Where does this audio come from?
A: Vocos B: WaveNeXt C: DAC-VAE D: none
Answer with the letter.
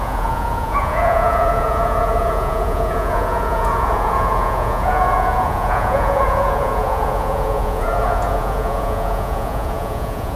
A